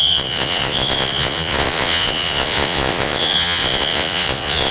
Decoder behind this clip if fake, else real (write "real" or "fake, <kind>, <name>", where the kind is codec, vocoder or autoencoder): fake, vocoder, Vocos